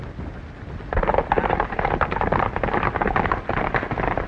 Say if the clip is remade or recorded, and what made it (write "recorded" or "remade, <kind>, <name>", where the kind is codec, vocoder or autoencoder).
recorded